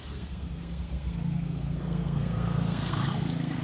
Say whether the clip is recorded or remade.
remade